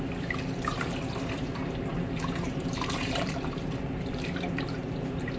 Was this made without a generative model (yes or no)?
no